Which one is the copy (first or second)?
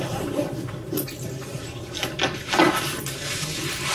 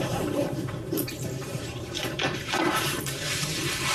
second